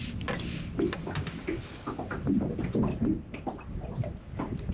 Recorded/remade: recorded